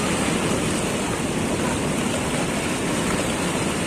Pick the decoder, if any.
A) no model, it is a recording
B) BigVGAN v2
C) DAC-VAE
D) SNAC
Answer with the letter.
A